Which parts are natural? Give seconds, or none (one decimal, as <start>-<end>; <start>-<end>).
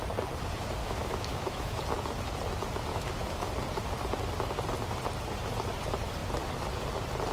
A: 0.0-0.8; 1.8-2.9; 3.5-7.3